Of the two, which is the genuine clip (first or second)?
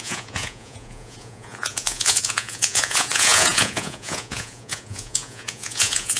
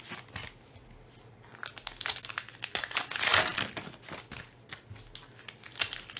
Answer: second